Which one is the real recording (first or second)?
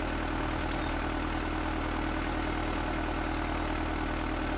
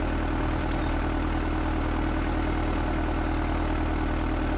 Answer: first